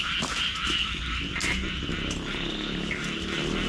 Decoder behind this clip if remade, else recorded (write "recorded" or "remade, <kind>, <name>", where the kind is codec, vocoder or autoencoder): recorded